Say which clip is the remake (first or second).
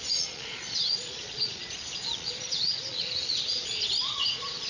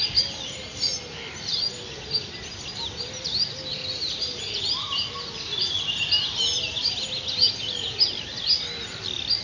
first